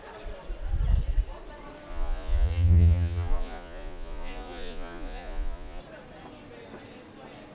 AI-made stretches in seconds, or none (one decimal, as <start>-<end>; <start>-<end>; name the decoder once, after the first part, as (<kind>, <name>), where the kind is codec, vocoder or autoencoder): 1.9-5.8 (vocoder, Vocos)